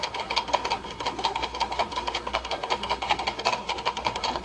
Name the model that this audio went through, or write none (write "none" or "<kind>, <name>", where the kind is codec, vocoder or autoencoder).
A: codec, SNAC